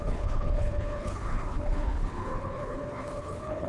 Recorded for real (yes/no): no